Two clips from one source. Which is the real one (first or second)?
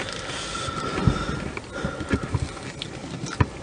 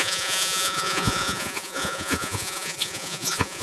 first